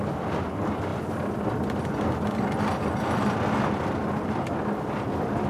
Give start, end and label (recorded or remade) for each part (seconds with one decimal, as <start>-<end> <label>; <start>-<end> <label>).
0.0-5.5 recorded